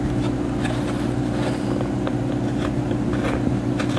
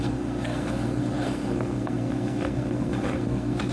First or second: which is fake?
second